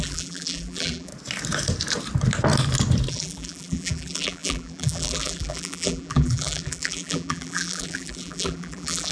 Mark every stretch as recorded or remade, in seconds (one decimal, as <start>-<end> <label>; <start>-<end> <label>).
0.0-1.1 remade; 1.1-3.1 recorded; 3.1-9.1 remade